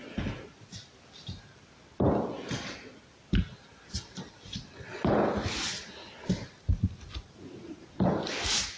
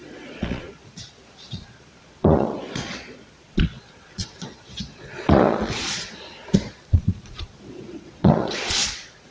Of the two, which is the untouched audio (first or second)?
first